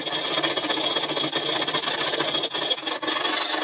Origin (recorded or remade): recorded